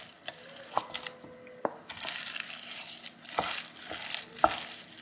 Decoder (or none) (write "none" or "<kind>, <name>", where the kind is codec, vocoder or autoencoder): none